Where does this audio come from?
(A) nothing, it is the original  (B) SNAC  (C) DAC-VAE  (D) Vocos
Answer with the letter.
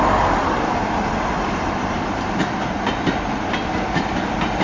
A